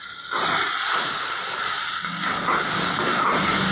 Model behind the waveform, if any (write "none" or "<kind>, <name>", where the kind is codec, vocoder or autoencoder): none